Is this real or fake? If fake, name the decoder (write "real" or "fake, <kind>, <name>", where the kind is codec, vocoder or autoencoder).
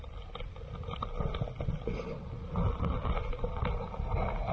real